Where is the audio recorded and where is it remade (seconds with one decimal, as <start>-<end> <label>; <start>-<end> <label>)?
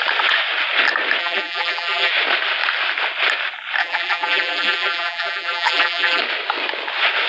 0.0-1.2 recorded; 1.2-2.1 remade; 2.1-3.8 recorded; 3.8-6.2 remade; 6.2-7.3 recorded